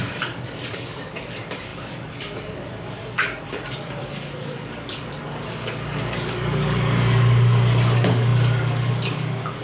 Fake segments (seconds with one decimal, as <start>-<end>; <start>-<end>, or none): 0.0-9.6